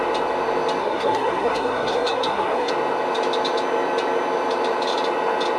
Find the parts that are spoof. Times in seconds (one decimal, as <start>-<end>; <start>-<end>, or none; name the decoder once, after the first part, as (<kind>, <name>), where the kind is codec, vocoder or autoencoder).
0.8-2.7 (codec, SNAC)